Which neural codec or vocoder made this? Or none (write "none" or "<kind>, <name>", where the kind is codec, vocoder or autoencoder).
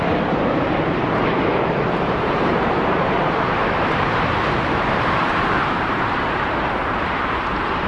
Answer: vocoder, BigVGAN v2